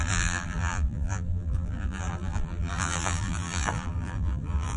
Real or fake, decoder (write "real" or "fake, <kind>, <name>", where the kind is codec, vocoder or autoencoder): fake, vocoder, BigVGAN v2